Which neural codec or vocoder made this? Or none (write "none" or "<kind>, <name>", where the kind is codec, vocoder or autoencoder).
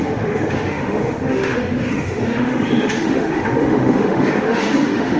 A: autoencoder, DAC-VAE